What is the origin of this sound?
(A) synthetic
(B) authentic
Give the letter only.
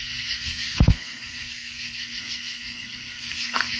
A